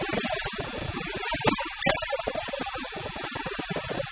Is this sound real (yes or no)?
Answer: yes